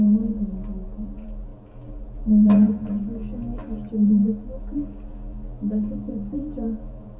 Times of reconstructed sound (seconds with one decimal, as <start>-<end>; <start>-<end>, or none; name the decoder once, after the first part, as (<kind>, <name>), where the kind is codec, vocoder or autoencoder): 0.0-3.2 (vocoder, Vocos); 3.9-7.2